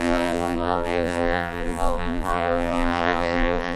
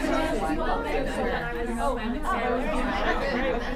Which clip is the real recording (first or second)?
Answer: second